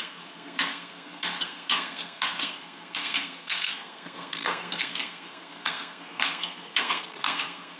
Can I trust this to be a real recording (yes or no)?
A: no